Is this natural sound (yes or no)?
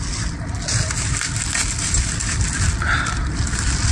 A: yes